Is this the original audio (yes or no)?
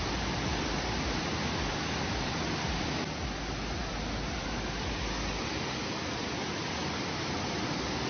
yes